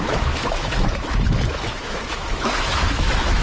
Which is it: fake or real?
fake